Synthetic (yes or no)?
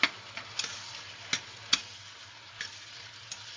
no